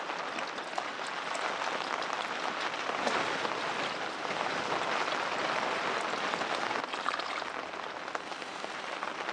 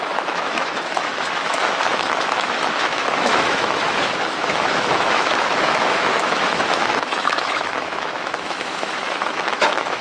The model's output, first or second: second